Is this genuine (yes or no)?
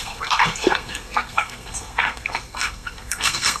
no